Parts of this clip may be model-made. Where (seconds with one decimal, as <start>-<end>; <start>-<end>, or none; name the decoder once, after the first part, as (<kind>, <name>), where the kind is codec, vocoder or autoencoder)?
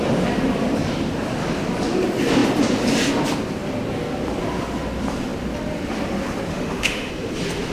6.5-7.1 (autoencoder, DAC-VAE)